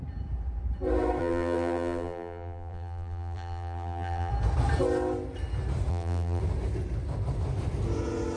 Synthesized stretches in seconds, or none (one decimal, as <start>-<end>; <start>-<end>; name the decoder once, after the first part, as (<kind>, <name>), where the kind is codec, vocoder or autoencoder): 1.2-4.3 (vocoder, BigVGAN v2); 5.9-6.4